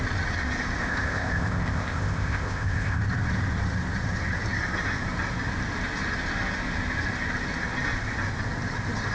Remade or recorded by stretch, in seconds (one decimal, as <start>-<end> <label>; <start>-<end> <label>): 0.0-0.8 recorded; 0.8-3.0 remade; 3.0-9.1 recorded